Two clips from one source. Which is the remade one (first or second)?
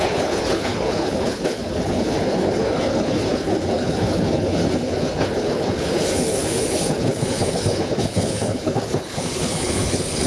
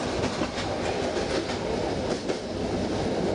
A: first